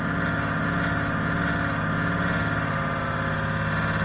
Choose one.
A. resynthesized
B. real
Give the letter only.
B